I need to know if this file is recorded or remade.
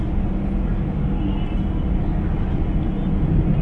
recorded